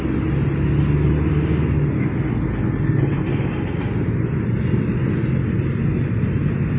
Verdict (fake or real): real